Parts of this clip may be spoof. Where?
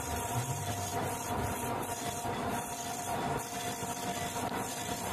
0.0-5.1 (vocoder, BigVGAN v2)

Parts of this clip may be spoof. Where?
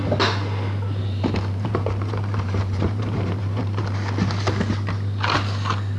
1.0-3.8 (vocoder, BigVGAN v2)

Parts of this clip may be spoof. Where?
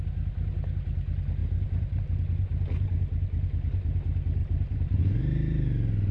1.4-2.0 (vocoder, BigVGAN v2); 4.4-5.6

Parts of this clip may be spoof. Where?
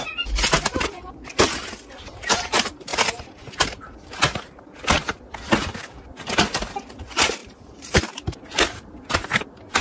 7.4-8.0 (vocoder, BigVGAN v2)